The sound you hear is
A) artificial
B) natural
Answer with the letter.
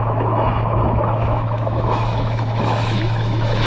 A